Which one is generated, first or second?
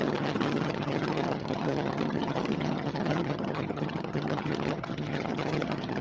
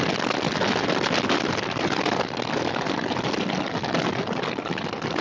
first